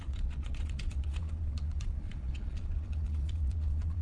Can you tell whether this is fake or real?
fake